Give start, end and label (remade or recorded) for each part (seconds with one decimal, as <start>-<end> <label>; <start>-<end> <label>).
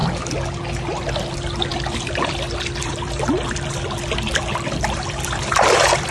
0.0-1.7 recorded; 1.7-5.4 remade; 5.4-6.1 recorded